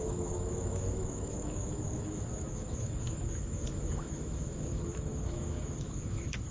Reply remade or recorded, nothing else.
remade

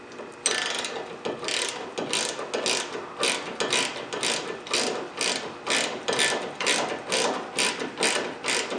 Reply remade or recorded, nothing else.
recorded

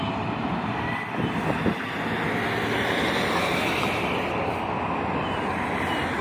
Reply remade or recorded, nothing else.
recorded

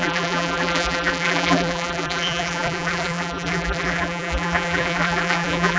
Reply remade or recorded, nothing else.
remade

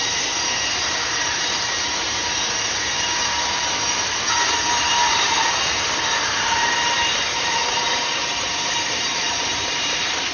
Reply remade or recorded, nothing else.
remade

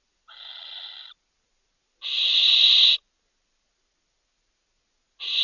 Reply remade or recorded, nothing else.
recorded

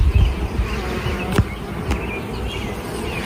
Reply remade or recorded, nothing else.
recorded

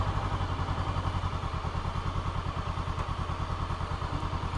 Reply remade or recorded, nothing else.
recorded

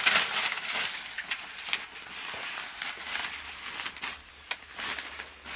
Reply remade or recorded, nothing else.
recorded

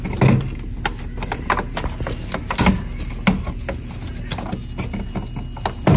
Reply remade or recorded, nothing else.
recorded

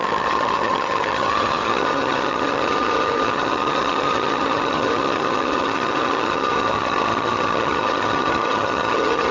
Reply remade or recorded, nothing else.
remade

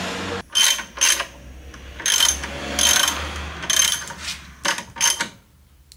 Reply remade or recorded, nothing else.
recorded